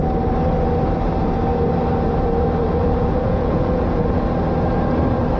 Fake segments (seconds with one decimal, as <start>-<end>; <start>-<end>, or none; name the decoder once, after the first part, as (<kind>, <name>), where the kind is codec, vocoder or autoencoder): 2.8-4.2 (vocoder, Vocos)